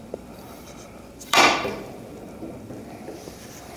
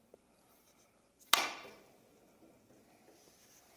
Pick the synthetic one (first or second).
first